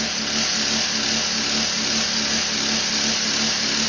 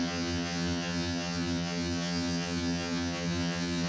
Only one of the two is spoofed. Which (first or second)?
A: second